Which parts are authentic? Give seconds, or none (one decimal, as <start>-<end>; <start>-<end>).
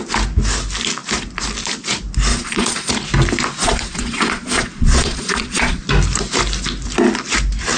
0.0-2.3; 2.9-3.6; 5.8-7.8